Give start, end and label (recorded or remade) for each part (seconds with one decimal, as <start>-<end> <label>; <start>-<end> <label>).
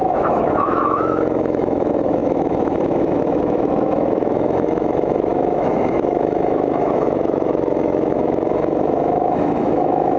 0.0-10.2 remade